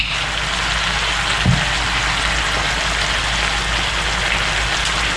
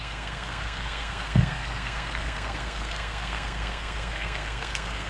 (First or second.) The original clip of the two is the first